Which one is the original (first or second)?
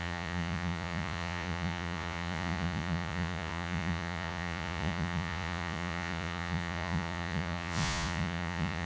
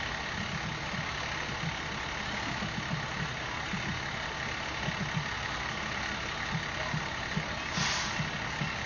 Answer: second